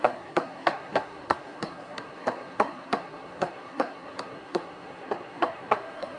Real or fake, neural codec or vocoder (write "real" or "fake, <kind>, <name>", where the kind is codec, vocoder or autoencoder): fake, codec, SNAC